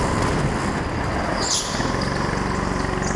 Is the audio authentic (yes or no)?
yes